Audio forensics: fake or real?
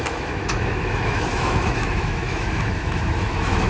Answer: fake